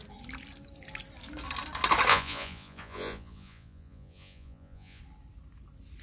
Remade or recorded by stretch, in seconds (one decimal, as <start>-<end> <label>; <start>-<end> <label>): 0.0-2.1 recorded; 2.1-5.0 remade; 5.0-6.0 recorded